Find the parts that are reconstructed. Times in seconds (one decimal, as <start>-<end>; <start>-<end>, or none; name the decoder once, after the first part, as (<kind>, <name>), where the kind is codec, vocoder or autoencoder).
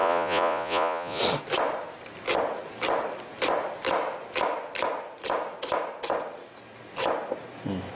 0.0-1.2 (vocoder, Vocos)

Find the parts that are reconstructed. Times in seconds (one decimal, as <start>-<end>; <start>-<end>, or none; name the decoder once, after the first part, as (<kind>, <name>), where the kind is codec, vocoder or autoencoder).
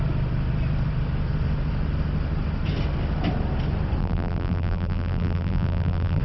4.0-6.2 (vocoder, BigVGAN v2)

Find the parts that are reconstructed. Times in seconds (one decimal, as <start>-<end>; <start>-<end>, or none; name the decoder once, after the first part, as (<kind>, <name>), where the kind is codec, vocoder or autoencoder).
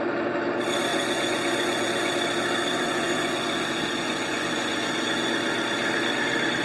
0.9-2.1 (vocoder, Vocos); 2.7-5.3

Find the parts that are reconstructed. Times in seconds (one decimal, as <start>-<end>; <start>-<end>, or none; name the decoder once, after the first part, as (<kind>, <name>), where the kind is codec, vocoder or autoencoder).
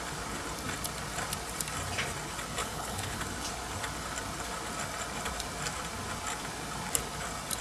2.6-3.2 (codec, HILCodec)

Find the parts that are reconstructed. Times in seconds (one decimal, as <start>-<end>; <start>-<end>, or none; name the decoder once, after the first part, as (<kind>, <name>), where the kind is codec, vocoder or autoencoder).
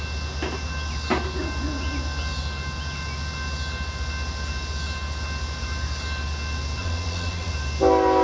6.8-7.5 (vocoder, Vocos)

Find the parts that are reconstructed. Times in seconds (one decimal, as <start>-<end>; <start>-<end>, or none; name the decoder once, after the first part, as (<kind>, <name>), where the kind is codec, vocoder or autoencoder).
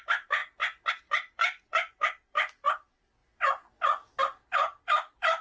0.0-0.4 (vocoder, BigVGAN v2); 0.9-3.2; 4.2-5.4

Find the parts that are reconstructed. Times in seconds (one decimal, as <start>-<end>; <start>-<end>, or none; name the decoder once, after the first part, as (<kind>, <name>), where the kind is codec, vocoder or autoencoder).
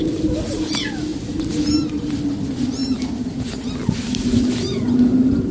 1.1-2.1 (vocoder, BigVGAN v2); 2.8-3.7